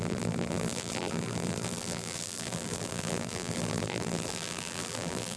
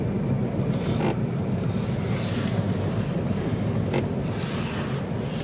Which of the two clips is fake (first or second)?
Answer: first